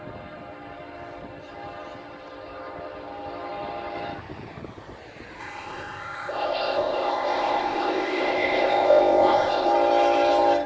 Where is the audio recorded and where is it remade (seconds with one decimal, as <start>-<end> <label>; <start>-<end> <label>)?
0.0-5.4 recorded; 5.4-9.7 remade; 9.7-10.7 recorded